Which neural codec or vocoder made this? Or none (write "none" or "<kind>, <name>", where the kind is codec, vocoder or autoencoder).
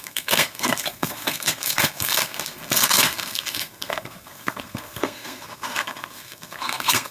codec, SNAC